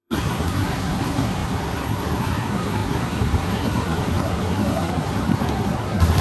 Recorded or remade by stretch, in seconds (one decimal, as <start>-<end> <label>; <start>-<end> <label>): 0.0-6.2 remade